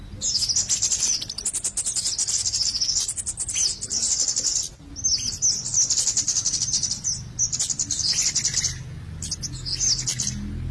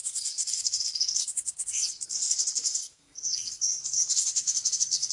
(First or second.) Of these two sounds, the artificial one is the second